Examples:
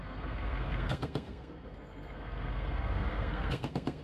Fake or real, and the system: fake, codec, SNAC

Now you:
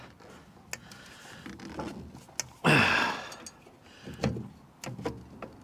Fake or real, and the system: real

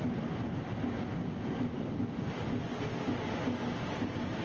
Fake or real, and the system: real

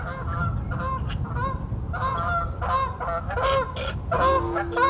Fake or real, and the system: real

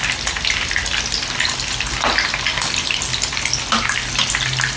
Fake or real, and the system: real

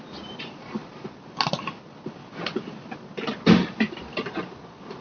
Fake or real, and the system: real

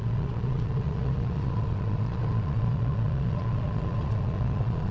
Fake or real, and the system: fake, vocoder, Vocos